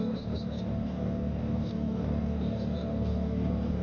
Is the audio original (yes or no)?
no